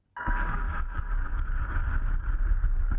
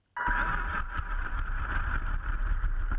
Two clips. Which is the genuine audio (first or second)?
second